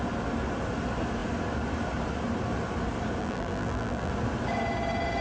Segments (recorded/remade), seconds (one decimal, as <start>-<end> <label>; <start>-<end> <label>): 0.0-3.2 recorded; 3.2-4.1 remade; 4.1-5.2 recorded